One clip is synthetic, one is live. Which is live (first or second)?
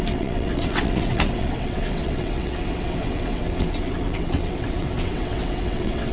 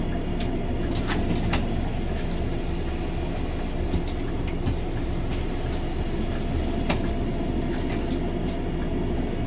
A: second